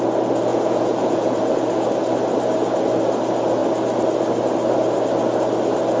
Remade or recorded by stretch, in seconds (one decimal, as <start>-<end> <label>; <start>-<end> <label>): 0.0-0.5 recorded; 0.5-1.9 remade; 1.9-6.0 recorded